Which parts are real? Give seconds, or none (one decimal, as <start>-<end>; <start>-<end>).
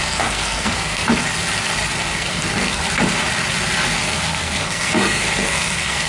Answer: 1.1-2.1; 2.8-4.0